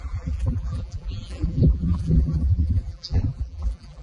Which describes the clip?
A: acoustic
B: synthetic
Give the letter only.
B